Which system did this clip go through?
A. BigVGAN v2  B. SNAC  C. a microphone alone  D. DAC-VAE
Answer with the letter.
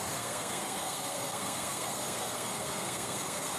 B